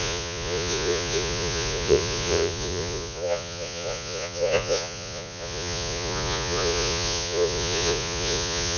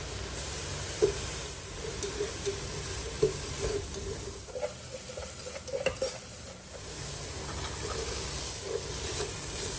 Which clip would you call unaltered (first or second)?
second